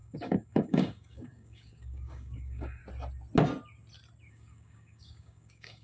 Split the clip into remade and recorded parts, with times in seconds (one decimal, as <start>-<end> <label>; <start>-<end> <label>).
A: 0.0-2.8 remade; 2.8-4.3 recorded; 4.3-5.8 remade